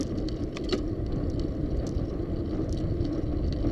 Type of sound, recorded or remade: recorded